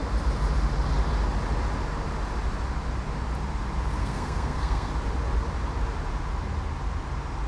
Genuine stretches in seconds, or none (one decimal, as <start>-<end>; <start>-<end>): 0.0-4.0; 4.9-7.5